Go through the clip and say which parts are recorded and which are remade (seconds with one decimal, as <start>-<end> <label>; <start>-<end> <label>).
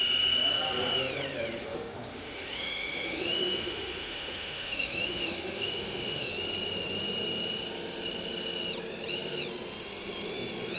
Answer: 0.0-1.6 recorded; 1.6-6.3 remade; 6.3-10.8 recorded